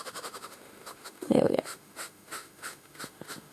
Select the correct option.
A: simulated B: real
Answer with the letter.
A